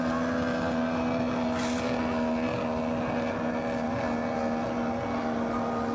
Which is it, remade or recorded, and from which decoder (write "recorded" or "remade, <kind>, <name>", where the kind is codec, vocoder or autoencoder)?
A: recorded